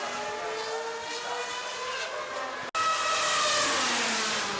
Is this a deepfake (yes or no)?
no